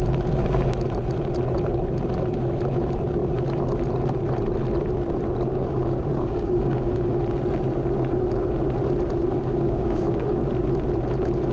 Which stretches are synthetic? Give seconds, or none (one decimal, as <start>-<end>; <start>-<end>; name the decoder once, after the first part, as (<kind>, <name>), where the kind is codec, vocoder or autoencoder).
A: 5.5-7.2 (codec, DAC); 9.4-10.4